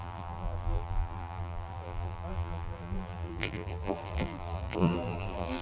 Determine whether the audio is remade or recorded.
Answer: remade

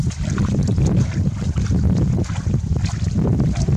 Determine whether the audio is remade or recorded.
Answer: remade